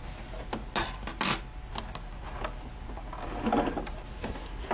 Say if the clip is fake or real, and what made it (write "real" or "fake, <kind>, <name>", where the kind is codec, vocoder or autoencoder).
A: real